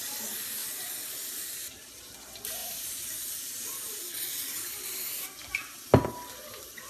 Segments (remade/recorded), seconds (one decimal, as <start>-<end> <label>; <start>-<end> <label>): 0.0-6.9 recorded